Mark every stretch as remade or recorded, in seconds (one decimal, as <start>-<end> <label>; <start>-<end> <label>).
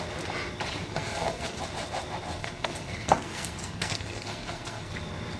0.0-0.8 recorded; 0.8-1.6 remade; 1.6-2.4 recorded; 2.4-4.9 remade; 4.9-5.4 recorded